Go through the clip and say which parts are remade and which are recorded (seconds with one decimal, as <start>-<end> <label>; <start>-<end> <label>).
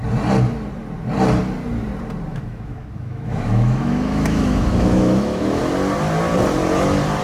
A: 0.0-2.3 recorded; 2.3-5.6 remade; 5.6-7.2 recorded